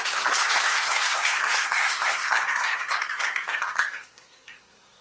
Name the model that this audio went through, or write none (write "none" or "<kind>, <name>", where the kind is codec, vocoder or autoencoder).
codec, SNAC